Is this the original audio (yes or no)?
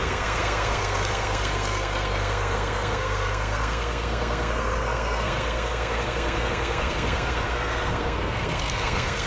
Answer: no